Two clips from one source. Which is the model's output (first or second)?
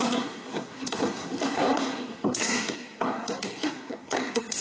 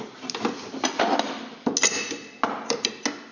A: first